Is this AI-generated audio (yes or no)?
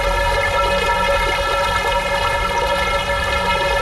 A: no